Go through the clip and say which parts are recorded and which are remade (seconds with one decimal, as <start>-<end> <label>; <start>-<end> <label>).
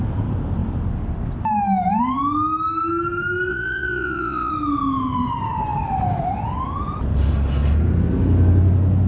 0.0-3.5 recorded; 3.5-4.5 remade; 4.5-9.1 recorded